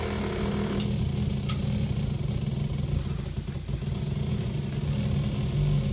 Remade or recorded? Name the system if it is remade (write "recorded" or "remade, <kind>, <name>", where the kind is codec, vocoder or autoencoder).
recorded